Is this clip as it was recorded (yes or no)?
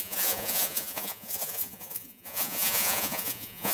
no